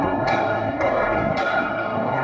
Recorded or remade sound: remade